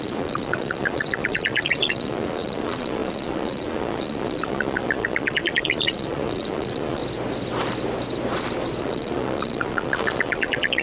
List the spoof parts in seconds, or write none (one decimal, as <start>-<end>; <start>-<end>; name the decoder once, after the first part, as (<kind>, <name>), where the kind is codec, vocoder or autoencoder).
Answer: 0.0-7.0 (vocoder, Vocos); 8.8-10.8